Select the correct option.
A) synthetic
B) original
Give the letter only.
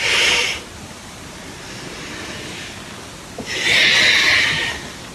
B